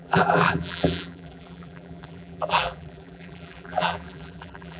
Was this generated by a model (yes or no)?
yes